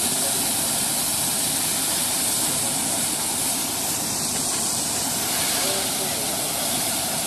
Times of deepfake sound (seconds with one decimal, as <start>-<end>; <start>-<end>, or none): none